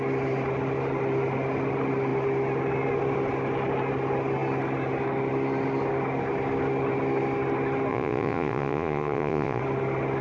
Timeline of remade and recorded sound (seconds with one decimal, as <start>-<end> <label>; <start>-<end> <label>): 0.0-7.9 recorded; 7.9-9.6 remade; 9.6-10.2 recorded